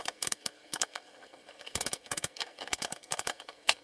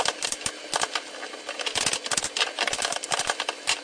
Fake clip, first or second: first